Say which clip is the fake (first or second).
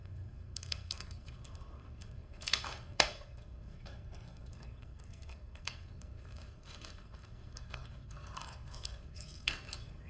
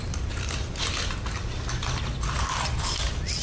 first